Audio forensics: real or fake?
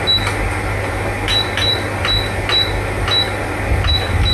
real